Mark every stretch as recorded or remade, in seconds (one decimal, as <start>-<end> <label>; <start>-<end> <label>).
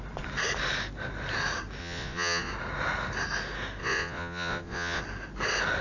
0.0-1.8 recorded; 1.8-2.5 remade; 2.5-3.8 recorded; 3.8-5.0 remade; 5.0-5.8 recorded